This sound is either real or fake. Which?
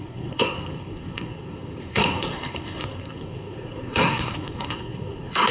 fake